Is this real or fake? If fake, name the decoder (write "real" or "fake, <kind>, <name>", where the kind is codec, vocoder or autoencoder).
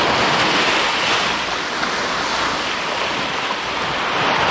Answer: real